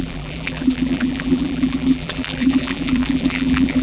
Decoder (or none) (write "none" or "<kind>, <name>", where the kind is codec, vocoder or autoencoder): vocoder, BigVGAN v2